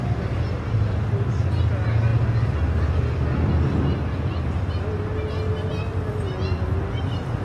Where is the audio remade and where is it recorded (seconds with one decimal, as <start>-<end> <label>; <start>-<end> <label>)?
0.0-7.4 recorded